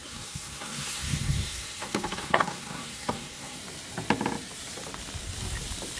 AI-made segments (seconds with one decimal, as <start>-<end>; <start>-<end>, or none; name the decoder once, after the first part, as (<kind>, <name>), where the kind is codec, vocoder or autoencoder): 0.0-3.6 (codec, SNAC)